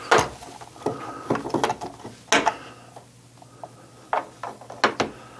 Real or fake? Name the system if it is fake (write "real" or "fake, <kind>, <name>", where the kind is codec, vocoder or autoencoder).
real